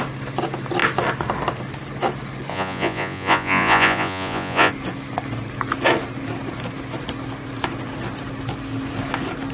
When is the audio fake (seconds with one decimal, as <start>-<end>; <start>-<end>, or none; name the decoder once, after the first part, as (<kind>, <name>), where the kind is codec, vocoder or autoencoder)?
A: 2.5-4.7 (vocoder, Vocos)